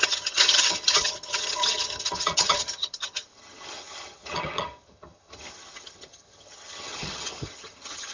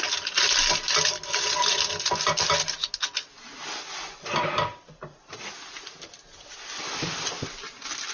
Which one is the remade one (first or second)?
first